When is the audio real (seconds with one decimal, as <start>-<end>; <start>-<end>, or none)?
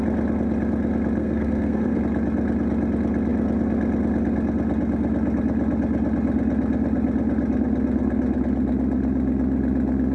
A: 0.0-1.2; 2.0-10.1